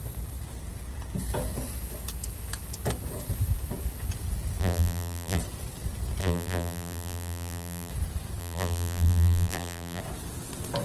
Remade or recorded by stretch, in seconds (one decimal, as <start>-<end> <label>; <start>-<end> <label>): 0.0-4.6 recorded; 4.6-5.4 remade; 5.4-6.2 recorded; 6.2-7.9 remade; 7.9-8.4 recorded; 8.4-10.0 remade; 10.0-10.8 recorded